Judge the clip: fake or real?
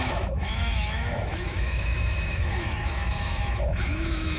fake